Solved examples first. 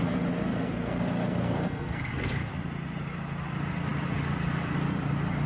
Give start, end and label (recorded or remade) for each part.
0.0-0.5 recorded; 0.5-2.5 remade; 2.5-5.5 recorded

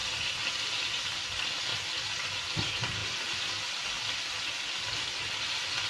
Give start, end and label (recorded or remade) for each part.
0.0-5.9 recorded

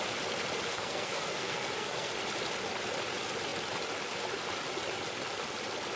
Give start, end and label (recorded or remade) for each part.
0.0-0.7 recorded; 0.7-2.1 remade; 2.1-6.0 recorded

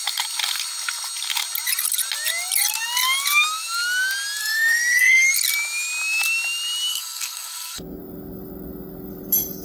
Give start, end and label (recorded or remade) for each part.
0.0-4.4 recorded; 4.4-5.3 remade; 5.3-6.9 recorded; 6.9-8.0 remade; 8.0-9.6 recorded

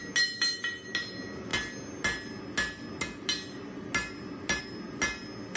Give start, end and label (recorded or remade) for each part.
0.0-5.6 recorded

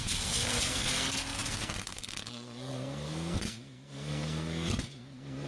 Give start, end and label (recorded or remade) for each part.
0.0-5.5 remade

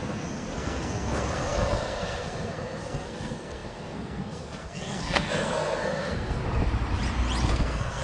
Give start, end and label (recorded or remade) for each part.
0.0-6.4 remade; 6.4-7.5 recorded; 7.5-8.0 remade

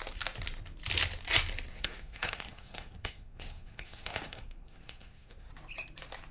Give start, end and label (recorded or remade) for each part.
0.0-1.7 recorded; 1.7-5.5 remade; 5.5-6.3 recorded